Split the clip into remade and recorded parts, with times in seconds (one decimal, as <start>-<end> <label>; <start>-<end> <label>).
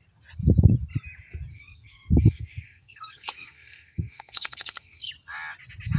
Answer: 0.0-1.5 recorded; 1.5-5.1 remade; 5.1-6.0 recorded